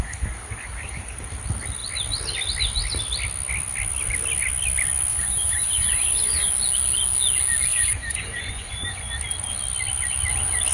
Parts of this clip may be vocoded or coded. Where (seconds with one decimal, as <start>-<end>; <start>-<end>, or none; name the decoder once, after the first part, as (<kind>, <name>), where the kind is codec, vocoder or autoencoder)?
5.1-6.5 (vocoder, Vocos); 7.7-9.1